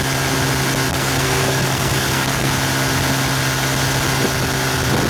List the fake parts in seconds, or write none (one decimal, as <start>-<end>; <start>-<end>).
0.9-2.5